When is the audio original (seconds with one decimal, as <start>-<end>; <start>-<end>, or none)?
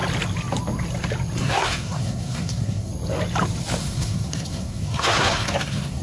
0.0-1.4; 2.9-3.8